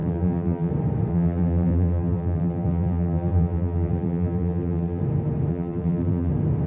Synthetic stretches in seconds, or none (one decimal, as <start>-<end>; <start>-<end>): 0.0-0.7; 1.1-5.0; 5.5-6.3